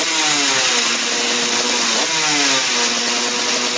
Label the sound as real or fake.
real